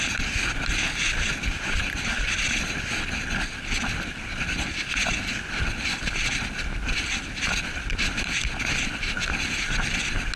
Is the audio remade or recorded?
recorded